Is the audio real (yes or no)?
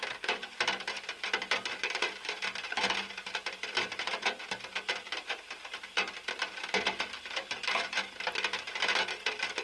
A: no